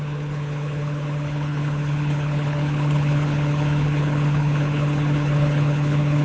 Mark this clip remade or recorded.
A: remade